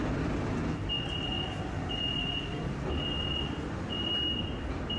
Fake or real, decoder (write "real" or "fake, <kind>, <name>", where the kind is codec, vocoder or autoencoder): real